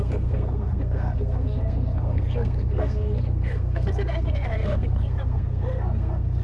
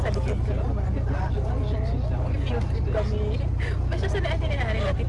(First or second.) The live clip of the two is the second